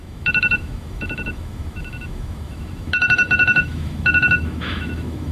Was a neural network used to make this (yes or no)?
yes